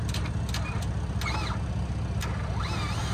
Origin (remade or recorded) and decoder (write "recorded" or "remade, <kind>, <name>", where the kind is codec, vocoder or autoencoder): recorded